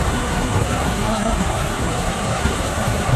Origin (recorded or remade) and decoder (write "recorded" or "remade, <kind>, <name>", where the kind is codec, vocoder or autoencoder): remade, codec, SNAC